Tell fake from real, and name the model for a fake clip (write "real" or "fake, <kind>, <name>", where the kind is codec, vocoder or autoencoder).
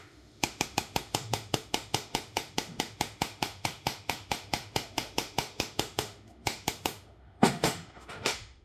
fake, autoencoder, DAC-VAE